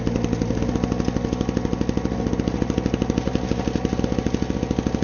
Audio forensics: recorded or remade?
recorded